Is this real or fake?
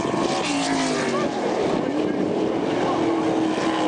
real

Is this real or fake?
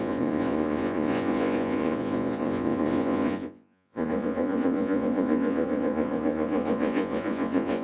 fake